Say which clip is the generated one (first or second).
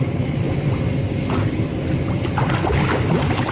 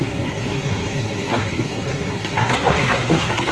second